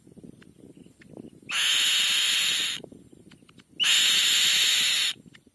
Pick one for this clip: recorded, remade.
recorded